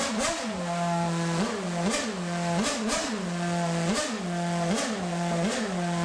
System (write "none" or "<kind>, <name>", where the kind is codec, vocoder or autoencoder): none